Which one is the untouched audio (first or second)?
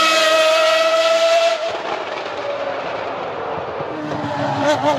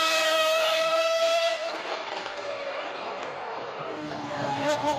first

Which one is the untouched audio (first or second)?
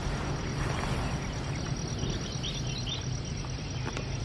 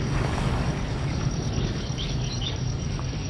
first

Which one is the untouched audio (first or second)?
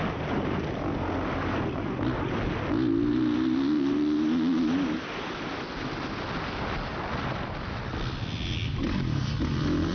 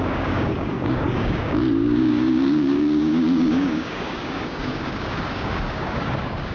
first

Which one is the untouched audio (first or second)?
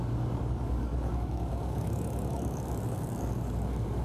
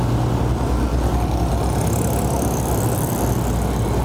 second